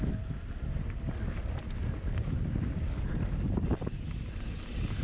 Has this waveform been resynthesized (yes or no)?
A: no